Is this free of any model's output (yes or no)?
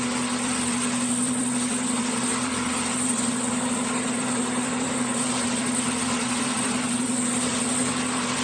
no